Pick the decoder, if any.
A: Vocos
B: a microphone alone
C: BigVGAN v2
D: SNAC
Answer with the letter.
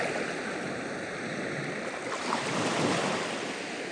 B